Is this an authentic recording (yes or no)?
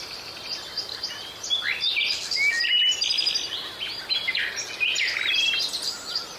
yes